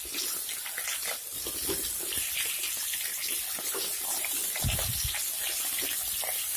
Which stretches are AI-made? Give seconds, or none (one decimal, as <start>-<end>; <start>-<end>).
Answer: none